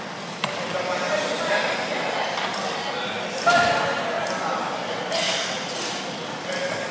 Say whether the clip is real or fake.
real